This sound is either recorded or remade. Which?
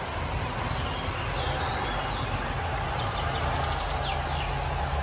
recorded